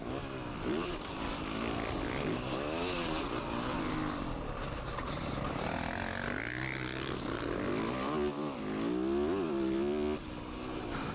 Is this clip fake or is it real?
real